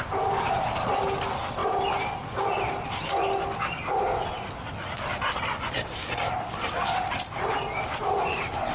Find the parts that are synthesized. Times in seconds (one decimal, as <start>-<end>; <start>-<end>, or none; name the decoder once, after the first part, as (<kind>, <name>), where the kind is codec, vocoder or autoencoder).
none